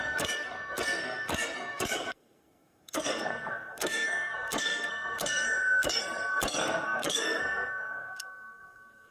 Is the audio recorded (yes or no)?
no